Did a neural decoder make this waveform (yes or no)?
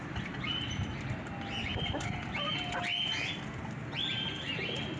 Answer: no